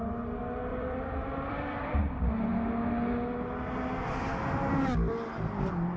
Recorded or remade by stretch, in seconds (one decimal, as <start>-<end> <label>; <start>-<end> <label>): 0.0-0.7 recorded; 0.7-2.0 remade; 2.0-6.0 recorded